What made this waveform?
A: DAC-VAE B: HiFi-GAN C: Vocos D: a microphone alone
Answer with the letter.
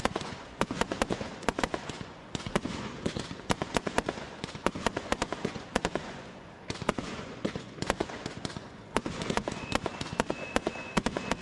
C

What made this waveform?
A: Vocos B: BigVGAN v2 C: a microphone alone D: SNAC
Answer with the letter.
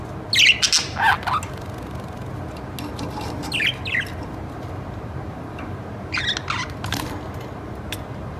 C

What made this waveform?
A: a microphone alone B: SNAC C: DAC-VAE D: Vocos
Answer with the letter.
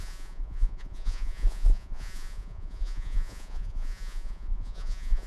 D